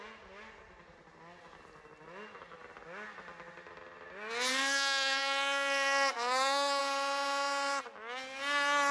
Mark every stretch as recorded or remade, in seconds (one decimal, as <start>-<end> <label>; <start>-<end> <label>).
0.0-4.5 recorded; 4.5-6.8 remade; 6.8-8.9 recorded